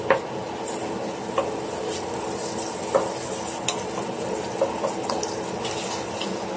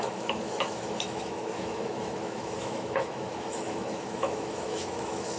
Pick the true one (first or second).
first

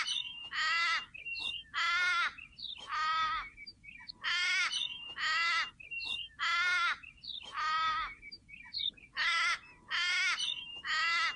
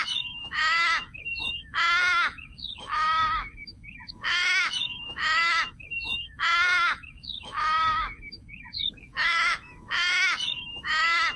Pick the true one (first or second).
first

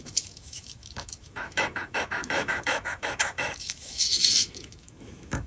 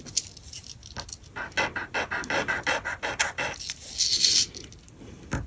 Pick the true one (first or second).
second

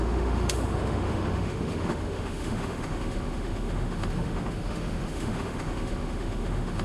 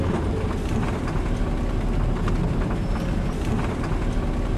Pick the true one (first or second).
second